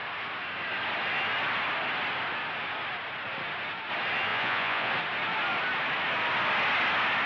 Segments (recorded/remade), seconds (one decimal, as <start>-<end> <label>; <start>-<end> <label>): 0.0-4.3 recorded; 4.3-4.9 remade; 4.9-7.3 recorded